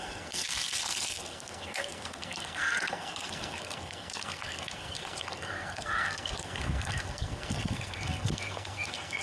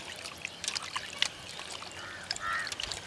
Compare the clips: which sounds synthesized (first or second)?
first